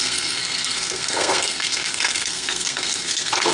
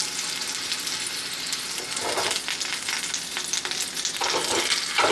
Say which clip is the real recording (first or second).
second